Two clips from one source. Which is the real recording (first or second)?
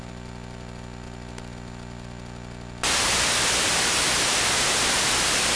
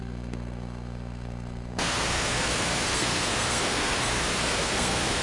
first